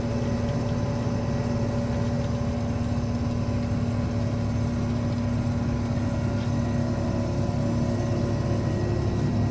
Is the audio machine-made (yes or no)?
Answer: no